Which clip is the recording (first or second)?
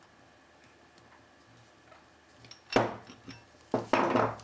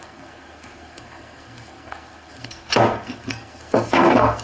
first